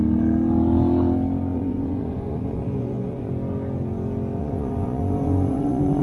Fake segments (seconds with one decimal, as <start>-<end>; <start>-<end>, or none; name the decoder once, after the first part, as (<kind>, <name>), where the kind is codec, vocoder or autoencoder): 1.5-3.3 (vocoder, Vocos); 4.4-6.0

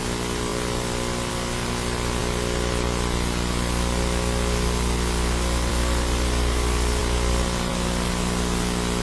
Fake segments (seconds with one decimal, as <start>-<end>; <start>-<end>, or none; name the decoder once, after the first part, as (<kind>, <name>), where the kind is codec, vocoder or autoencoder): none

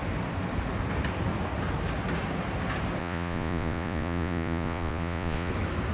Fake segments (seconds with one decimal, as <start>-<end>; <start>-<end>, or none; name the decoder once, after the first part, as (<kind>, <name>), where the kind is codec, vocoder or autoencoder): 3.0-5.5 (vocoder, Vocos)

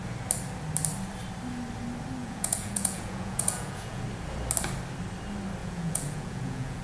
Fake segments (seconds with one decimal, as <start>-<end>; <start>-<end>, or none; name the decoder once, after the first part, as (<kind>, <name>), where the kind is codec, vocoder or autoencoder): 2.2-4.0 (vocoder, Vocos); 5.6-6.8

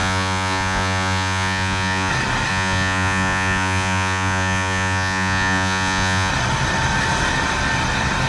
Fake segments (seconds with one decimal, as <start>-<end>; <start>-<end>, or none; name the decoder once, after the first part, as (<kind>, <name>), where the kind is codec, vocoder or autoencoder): 0.0-2.1 (vocoder, Vocos); 2.5-6.3